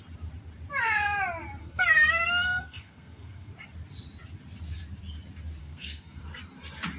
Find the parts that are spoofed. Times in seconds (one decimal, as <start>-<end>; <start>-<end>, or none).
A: 1.6-3.5; 5.6-6.2